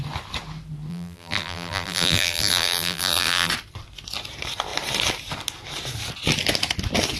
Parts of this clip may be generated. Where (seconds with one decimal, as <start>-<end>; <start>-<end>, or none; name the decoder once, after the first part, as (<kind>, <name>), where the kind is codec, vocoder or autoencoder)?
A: 0.9-3.5 (vocoder, BigVGAN v2)